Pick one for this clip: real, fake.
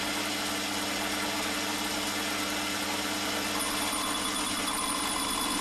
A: real